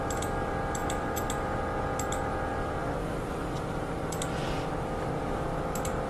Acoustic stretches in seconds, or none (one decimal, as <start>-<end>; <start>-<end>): 0.0-0.8; 1.6-6.1